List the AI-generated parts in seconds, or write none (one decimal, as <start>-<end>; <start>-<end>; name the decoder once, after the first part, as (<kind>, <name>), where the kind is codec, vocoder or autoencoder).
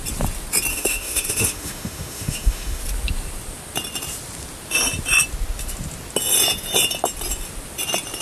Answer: 0.7-2.8 (autoencoder, DAC-VAE)